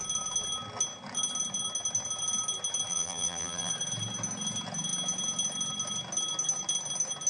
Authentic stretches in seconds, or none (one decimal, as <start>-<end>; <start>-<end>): 0.0-2.9; 3.7-7.3